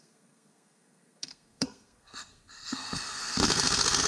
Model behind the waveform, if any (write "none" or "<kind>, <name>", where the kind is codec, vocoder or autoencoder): codec, SNAC